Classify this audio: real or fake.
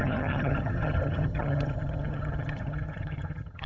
fake